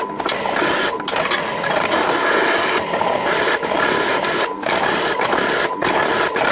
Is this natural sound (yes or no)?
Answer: yes